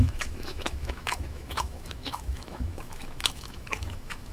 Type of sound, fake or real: fake